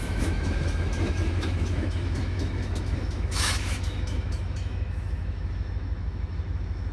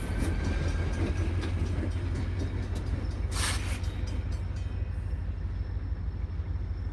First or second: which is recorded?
second